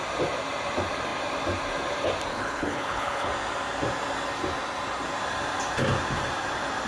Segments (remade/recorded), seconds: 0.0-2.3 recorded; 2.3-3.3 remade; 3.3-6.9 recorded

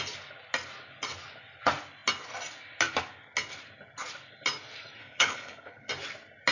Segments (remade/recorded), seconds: 0.0-5.0 recorded; 5.0-5.9 remade; 5.9-6.5 recorded